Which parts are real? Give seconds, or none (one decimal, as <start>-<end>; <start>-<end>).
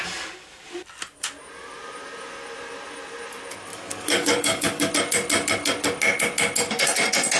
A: 0.0-3.7; 4.9-7.4